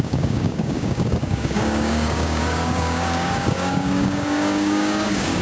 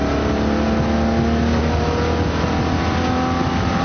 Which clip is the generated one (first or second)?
first